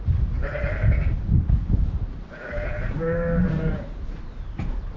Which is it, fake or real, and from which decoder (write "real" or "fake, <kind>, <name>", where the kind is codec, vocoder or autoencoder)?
fake, vocoder, BigVGAN v2